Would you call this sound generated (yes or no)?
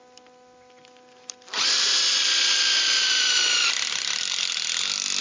no